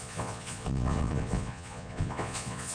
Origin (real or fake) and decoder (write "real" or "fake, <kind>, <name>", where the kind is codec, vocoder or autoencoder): fake, vocoder, Vocos